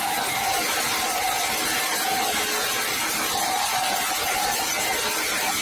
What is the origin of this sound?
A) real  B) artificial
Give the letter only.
A